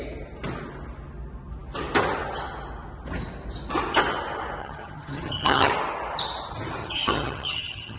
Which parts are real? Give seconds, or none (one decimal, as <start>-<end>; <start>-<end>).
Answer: 0.0-4.6; 5.7-6.8